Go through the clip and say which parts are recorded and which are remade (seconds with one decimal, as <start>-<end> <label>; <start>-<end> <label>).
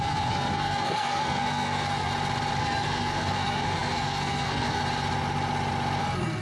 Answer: 0.0-2.1 remade; 2.1-2.6 recorded; 2.6-4.8 remade; 4.8-6.0 recorded; 6.0-6.4 remade